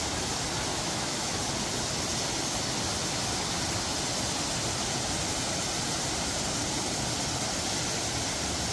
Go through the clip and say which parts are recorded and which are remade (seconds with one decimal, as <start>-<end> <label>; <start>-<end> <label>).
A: 0.0-0.7 recorded; 0.7-1.4 remade; 1.4-8.7 recorded